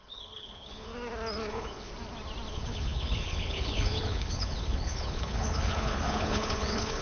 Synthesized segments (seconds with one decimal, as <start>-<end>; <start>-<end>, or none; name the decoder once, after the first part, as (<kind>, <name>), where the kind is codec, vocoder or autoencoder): 0.0-0.9 (codec, HILCodec); 1.5-1.9; 2.5-7.0